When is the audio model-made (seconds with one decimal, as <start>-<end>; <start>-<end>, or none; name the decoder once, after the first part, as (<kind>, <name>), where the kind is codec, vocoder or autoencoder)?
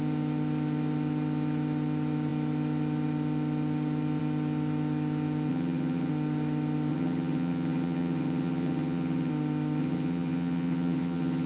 5.5-6.1 (vocoder, HiFi-GAN); 6.9-9.3; 9.8-11.5